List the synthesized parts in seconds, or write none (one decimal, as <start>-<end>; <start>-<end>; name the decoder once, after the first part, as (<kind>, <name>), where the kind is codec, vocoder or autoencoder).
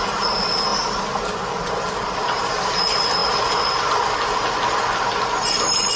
none